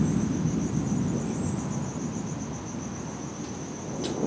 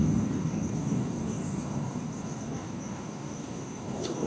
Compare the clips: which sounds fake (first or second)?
second